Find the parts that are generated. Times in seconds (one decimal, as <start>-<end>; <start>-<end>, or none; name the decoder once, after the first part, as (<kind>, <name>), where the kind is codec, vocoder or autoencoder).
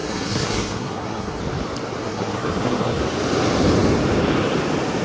0.0-1.4 (codec, SNAC); 2.0-3.0